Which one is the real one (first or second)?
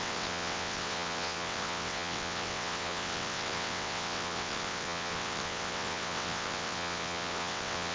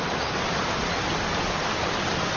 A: second